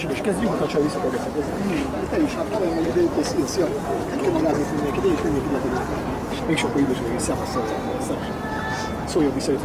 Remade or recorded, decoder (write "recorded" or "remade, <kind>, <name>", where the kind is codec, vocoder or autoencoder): recorded